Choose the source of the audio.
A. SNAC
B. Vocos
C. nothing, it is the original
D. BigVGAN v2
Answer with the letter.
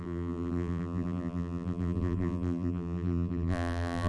D